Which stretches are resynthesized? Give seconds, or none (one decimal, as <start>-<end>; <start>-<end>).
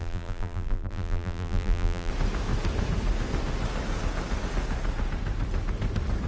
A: 0.0-2.1